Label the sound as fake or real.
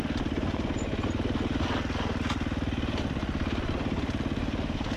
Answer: real